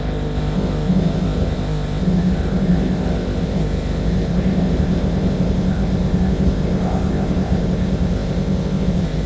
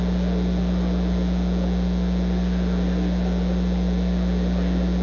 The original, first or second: second